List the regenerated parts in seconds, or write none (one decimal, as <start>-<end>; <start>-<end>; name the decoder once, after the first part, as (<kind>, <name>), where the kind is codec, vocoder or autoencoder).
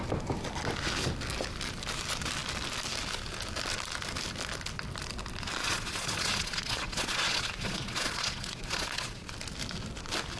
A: 5.6-9.3 (vocoder, Vocos)